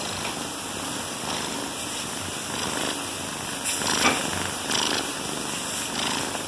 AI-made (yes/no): no